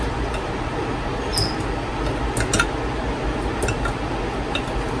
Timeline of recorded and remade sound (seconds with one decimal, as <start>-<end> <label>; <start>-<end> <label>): 0.0-5.0 recorded